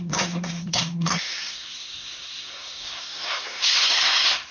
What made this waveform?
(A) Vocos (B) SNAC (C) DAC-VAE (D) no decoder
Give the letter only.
B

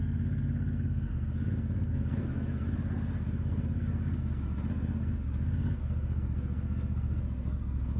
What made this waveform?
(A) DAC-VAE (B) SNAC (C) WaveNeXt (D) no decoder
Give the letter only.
B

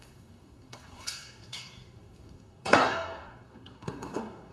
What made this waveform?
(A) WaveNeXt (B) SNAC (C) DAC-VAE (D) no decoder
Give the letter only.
B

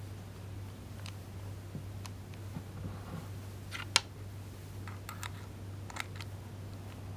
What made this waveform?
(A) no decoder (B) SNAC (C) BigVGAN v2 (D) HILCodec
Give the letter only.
A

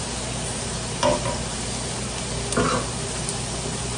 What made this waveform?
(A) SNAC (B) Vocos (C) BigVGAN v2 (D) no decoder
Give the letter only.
D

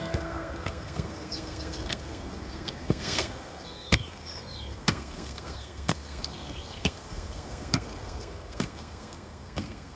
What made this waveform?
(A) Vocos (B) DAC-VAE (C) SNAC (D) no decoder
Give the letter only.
C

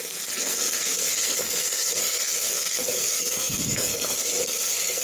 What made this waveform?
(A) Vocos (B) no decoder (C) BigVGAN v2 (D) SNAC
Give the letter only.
D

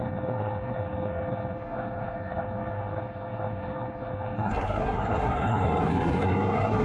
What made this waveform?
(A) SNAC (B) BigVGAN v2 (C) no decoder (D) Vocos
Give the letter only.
A